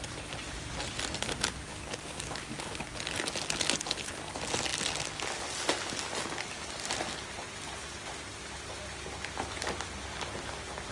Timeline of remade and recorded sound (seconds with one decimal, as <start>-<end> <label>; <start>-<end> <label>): 0.0-1.7 recorded; 1.7-2.9 remade; 2.9-10.9 recorded